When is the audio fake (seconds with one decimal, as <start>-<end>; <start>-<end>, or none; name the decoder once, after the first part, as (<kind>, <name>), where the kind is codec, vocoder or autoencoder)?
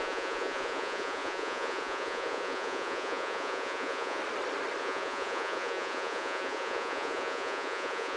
0.0-4.2 (vocoder, Vocos); 4.8-8.2